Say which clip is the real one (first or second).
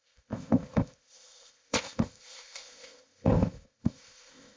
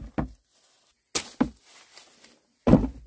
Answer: second